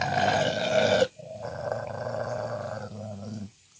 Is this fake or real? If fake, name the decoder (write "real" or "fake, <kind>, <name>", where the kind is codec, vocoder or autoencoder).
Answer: real